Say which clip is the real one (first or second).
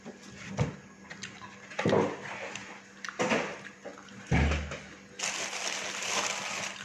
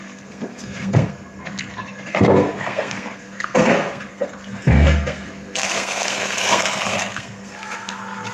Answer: first